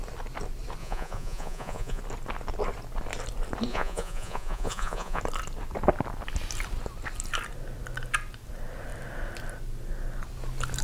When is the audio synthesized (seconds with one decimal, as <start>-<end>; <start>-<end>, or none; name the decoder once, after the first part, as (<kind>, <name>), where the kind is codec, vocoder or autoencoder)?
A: 0.8-2.0 (vocoder, Vocos); 3.7-5.2